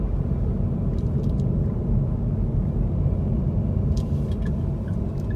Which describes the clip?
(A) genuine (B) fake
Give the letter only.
A